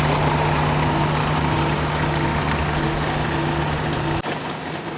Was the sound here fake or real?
real